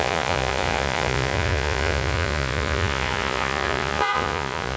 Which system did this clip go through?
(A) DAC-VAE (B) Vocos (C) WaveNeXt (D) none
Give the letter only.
B